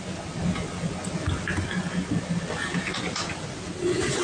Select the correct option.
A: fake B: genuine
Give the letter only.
B